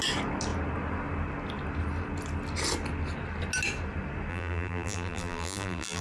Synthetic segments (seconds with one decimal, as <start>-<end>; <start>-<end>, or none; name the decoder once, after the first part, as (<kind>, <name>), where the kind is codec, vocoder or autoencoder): 4.3-6.0 (vocoder, BigVGAN v2)